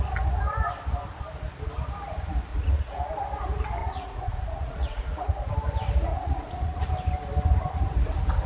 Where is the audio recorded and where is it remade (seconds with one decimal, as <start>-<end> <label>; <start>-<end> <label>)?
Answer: 0.0-2.5 recorded; 2.5-3.0 remade; 3.0-3.8 recorded; 3.8-5.5 remade; 5.5-6.1 recorded; 6.1-6.9 remade; 6.9-8.5 recorded